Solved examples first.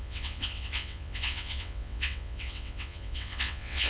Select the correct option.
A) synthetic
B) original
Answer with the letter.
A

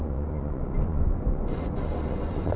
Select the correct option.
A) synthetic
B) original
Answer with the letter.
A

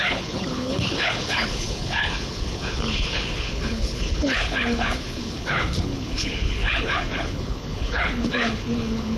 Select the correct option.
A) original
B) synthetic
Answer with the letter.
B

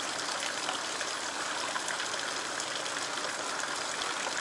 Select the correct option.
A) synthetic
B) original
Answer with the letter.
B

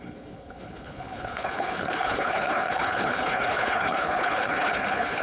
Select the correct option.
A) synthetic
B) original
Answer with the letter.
A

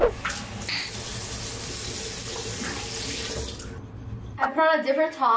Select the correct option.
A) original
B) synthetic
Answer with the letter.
A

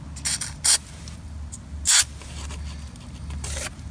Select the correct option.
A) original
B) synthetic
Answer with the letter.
A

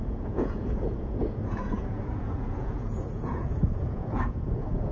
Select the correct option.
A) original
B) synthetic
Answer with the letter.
B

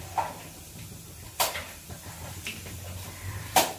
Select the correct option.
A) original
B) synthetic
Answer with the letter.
A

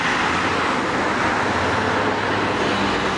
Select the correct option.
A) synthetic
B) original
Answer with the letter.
B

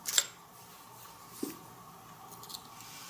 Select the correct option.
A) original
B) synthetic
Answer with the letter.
A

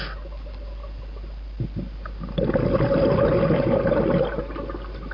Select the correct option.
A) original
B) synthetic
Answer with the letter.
A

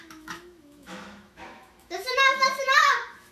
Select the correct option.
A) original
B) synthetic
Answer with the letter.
B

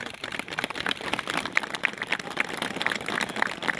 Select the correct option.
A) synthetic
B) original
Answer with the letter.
A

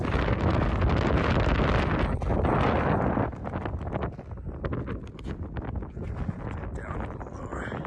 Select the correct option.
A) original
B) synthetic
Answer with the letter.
A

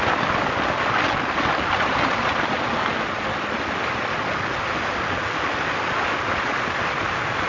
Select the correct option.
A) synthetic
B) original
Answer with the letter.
B